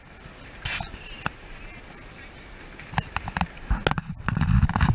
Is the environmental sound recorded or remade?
recorded